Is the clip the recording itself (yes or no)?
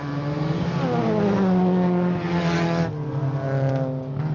yes